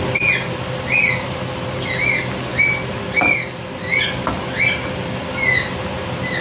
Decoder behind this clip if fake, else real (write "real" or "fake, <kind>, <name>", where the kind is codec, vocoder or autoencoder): real